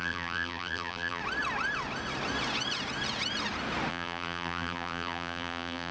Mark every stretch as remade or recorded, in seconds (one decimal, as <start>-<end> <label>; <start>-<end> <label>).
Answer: 0.0-1.2 remade; 1.2-3.9 recorded; 3.9-5.9 remade